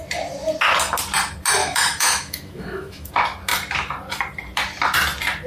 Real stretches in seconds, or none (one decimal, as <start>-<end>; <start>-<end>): 0.0-1.6; 3.1-5.5